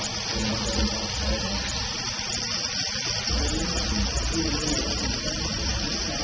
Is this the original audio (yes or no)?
yes